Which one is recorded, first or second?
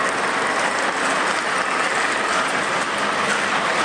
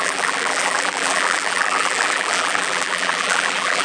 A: first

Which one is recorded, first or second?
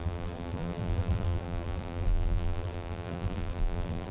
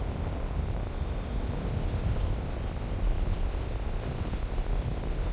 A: second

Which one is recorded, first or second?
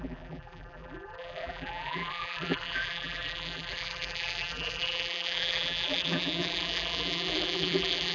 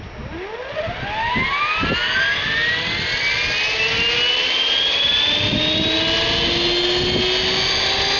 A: second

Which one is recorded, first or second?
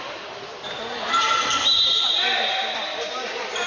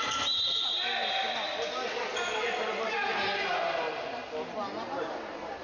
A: second